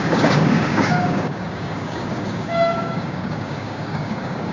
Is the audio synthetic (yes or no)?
yes